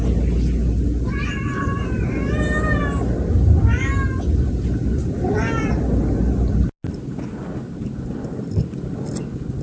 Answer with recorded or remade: recorded